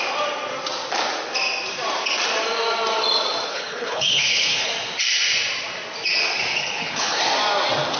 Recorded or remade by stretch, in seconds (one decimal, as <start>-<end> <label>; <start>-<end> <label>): 0.0-3.5 recorded; 3.5-4.7 remade; 4.7-6.6 recorded; 6.6-7.2 remade; 7.2-8.0 recorded